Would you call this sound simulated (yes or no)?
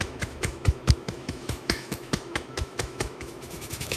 yes